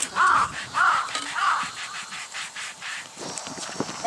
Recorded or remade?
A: remade